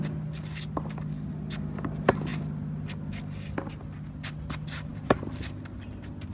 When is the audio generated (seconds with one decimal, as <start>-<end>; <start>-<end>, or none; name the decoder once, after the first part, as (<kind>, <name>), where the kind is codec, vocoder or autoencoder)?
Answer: none